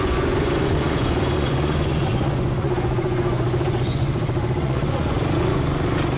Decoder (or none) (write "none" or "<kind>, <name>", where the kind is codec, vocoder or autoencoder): vocoder, Vocos